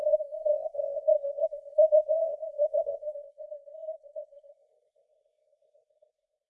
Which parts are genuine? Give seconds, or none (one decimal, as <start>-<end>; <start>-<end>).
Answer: none